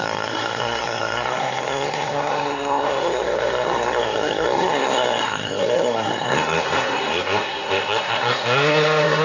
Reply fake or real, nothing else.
fake